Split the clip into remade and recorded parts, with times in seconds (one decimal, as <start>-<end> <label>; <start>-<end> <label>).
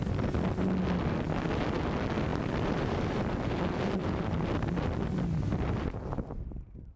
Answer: 0.0-2.3 recorded; 2.3-3.5 remade; 3.5-4.0 recorded; 4.0-4.6 remade; 4.6-7.0 recorded